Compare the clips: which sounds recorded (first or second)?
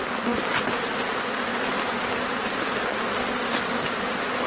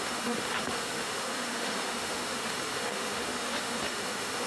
first